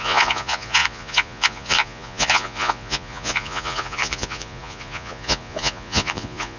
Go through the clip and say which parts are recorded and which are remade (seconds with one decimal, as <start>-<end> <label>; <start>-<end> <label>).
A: 0.0-6.6 remade